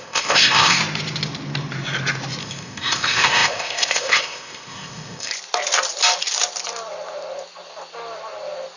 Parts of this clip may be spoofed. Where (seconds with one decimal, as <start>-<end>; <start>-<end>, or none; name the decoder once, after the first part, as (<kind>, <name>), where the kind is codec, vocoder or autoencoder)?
0.0-0.8 (codec, ZipCodec); 2.4-5.3